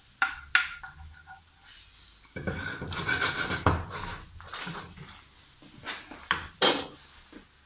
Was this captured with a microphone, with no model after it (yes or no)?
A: yes